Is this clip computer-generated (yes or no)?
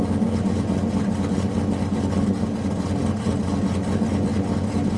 no